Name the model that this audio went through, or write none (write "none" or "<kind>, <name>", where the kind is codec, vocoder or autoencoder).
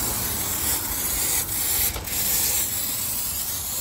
none